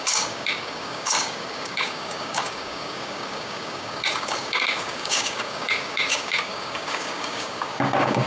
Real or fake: fake